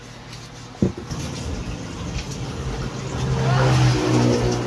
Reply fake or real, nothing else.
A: real